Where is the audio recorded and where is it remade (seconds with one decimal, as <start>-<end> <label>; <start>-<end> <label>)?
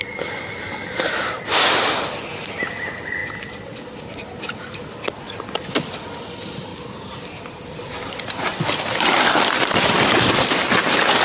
0.0-3.2 recorded; 3.2-4.0 remade; 4.0-6.7 recorded; 6.7-10.0 remade; 10.0-11.2 recorded